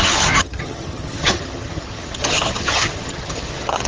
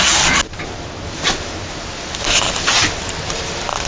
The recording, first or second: second